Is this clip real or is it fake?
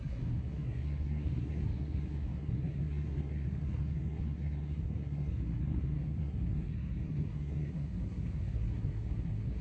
fake